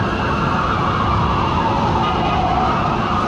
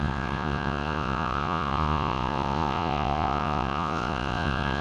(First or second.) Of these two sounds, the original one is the first